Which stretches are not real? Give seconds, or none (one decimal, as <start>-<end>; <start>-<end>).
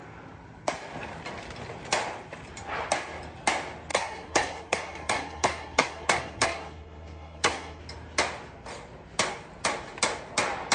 3.9-7.8